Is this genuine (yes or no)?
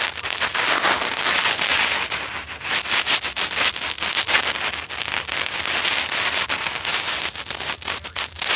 yes